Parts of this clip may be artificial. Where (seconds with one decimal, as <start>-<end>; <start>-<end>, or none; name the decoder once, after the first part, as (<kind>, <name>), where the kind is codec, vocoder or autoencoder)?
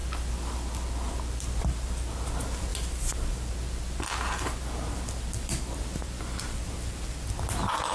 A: none